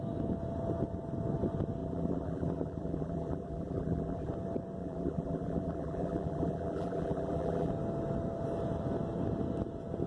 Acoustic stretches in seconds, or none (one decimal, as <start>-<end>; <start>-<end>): 0.0-1.8; 4.3-4.8; 7.7-10.1